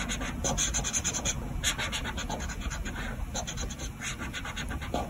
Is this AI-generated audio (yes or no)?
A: no